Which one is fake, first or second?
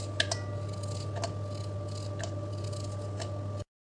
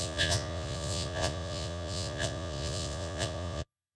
second